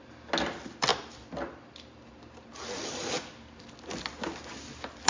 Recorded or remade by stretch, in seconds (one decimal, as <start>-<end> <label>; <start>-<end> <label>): 0.0-5.1 recorded